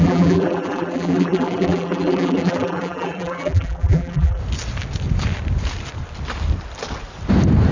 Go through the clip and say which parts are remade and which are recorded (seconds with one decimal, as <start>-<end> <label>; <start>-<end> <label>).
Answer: 0.0-4.4 remade; 4.4-7.7 recorded